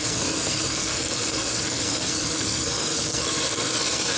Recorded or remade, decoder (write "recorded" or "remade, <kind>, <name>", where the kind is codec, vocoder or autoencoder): remade, codec, SNAC